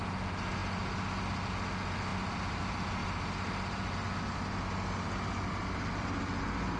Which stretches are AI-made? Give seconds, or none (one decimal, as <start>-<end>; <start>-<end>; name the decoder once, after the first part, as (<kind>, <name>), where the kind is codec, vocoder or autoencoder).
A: none